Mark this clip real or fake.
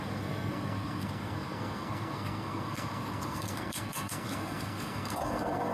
fake